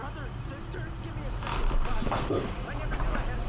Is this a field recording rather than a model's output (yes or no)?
yes